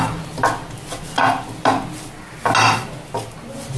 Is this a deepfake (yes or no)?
no